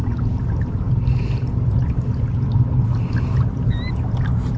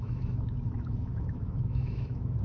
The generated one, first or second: second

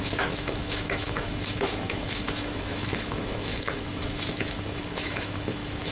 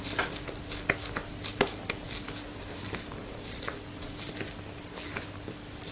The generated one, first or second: first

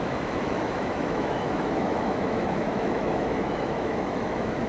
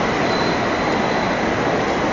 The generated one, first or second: first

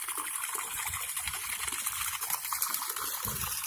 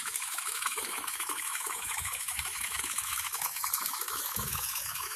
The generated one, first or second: second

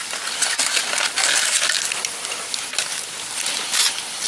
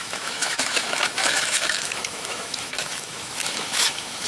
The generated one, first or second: second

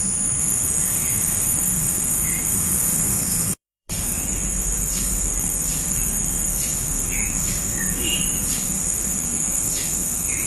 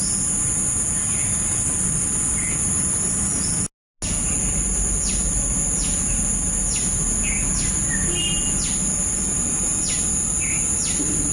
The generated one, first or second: first